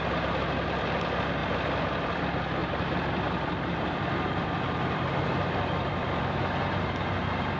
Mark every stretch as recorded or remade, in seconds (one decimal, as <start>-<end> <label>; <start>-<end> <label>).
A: 0.0-1.4 recorded; 1.4-2.2 remade; 2.2-2.6 recorded; 2.6-6.4 remade; 6.4-7.6 recorded